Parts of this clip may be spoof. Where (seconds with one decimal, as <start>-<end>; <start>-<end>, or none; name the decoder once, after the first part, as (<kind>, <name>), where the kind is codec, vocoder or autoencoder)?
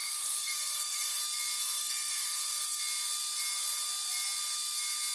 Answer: 0.0-1.2 (codec, SNAC); 1.6-2.8